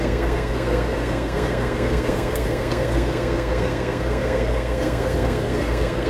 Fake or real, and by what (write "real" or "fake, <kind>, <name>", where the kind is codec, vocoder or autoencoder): fake, codec, SNAC